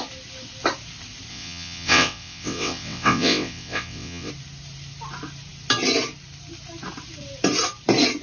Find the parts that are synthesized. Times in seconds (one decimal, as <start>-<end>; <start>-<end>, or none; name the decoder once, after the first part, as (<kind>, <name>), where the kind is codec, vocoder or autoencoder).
1.3-4.3 (vocoder, WaveNeXt)